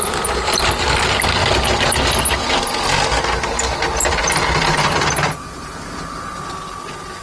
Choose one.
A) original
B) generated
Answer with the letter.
A